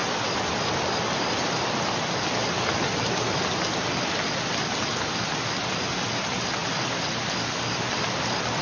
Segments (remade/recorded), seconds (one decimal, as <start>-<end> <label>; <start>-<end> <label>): 0.0-8.6 recorded